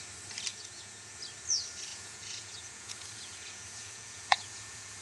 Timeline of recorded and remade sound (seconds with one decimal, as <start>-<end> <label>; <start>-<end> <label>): 0.0-0.5 recorded; 0.5-1.1 remade; 1.1-1.9 recorded; 1.9-5.0 remade

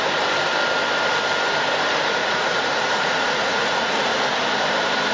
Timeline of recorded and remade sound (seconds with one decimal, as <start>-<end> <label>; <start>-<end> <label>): 0.0-2.2 recorded; 2.2-4.5 remade; 4.5-5.1 recorded

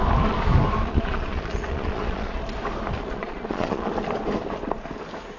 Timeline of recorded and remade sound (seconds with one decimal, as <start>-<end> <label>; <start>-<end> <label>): 0.0-0.9 recorded; 0.9-2.4 remade; 2.4-3.0 recorded; 3.0-3.9 remade; 3.9-5.4 recorded